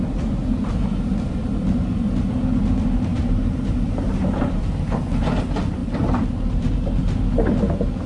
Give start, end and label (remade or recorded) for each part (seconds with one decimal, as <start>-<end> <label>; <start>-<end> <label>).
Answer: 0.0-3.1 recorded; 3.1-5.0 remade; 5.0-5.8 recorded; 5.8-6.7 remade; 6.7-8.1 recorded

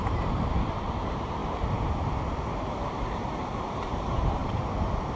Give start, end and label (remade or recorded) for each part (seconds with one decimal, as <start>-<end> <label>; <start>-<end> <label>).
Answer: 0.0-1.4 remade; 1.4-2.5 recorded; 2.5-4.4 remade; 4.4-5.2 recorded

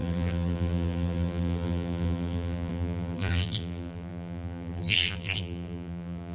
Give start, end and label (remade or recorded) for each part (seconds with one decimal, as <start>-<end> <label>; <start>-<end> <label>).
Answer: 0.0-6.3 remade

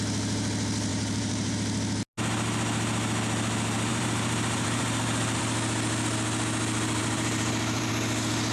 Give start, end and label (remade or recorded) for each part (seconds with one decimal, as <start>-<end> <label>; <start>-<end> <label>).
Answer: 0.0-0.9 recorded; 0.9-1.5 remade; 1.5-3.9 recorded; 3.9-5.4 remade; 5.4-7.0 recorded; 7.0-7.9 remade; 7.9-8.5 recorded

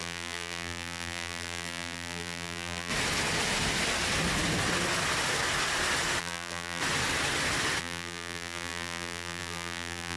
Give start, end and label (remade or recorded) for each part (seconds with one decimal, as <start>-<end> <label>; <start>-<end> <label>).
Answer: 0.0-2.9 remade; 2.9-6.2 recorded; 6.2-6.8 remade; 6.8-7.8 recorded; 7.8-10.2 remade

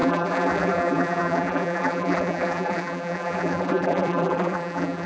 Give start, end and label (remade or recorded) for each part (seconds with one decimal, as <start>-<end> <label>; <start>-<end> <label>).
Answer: 0.0-5.1 remade